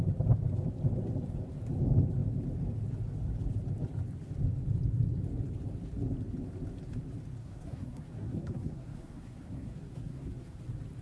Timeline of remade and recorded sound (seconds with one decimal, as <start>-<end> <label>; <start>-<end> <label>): 0.0-7.4 recorded; 7.4-10.6 remade; 10.6-11.0 recorded